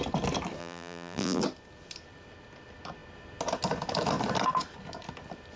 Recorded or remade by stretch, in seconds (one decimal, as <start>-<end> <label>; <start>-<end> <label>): 0.0-0.6 recorded; 0.6-1.4 remade; 1.4-5.6 recorded